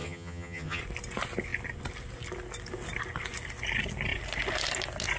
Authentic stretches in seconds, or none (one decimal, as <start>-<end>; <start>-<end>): 0.8-5.2